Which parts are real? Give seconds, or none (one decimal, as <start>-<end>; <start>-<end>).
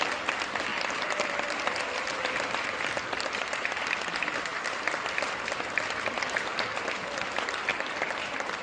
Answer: 0.0-0.7; 3.9-4.5; 5.2-7.7